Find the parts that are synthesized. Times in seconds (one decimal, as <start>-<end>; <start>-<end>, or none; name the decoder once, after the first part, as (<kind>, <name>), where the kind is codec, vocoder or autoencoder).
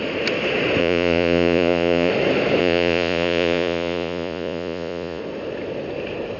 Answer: 0.8-2.1 (vocoder, Vocos); 2.6-5.2